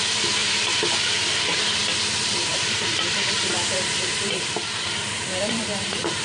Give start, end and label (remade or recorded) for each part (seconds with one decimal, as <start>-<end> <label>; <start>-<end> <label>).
0.0-2.5 recorded; 2.5-6.2 remade

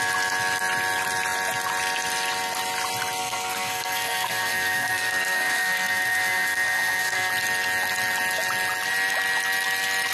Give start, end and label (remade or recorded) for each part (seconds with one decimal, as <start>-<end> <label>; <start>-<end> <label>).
0.0-3.2 recorded; 3.2-7.3 remade; 7.3-10.1 recorded

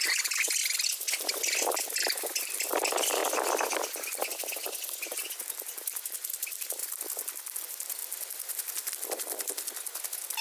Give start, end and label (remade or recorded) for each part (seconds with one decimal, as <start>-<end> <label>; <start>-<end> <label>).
0.0-0.6 remade; 0.6-1.3 recorded; 1.3-8.0 remade; 8.0-8.9 recorded; 8.9-10.4 remade

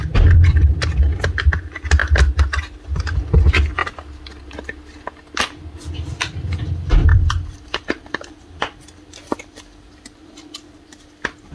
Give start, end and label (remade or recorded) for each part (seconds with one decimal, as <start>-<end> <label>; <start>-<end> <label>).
0.0-7.1 recorded; 7.1-9.9 remade; 9.9-11.5 recorded

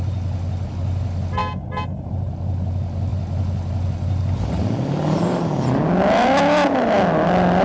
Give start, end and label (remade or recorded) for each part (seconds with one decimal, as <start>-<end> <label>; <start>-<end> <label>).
0.0-7.6 recorded

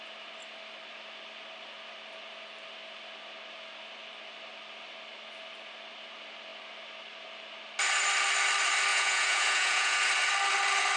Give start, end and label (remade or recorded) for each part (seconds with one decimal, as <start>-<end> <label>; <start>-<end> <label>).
0.0-8.9 recorded; 8.9-10.1 remade; 10.1-11.0 recorded

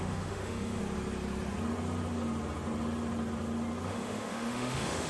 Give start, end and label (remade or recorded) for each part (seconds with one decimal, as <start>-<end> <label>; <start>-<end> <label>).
0.0-0.8 remade; 0.8-3.9 recorded; 3.9-5.1 remade

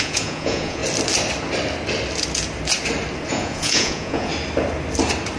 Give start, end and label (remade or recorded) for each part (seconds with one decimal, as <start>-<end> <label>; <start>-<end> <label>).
0.0-0.8 remade; 0.8-3.3 recorded; 3.3-4.3 remade; 4.3-5.4 recorded